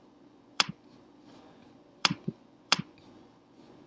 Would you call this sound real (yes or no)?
no